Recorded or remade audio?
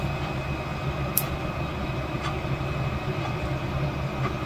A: recorded